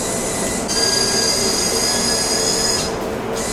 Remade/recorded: recorded